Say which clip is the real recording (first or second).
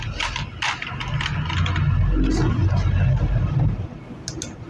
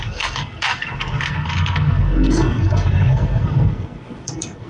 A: first